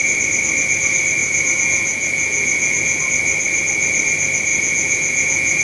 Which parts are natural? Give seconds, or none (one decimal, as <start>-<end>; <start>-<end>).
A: 0.0-1.2; 3.0-4.5